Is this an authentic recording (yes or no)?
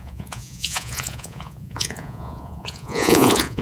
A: no